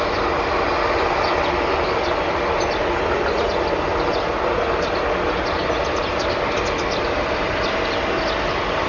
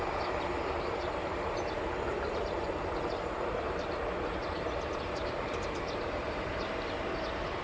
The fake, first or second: second